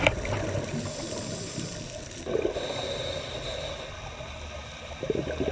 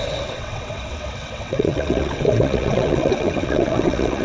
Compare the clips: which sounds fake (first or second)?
second